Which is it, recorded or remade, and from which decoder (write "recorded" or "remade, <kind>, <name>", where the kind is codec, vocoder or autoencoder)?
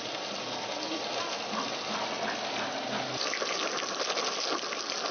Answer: recorded